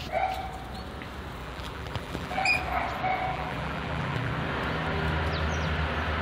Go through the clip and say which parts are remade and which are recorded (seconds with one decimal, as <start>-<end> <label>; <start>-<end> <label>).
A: 0.0-1.4 recorded; 1.4-2.6 remade; 2.6-3.3 recorded; 3.3-4.3 remade; 4.3-6.2 recorded